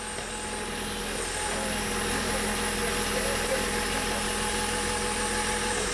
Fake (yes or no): no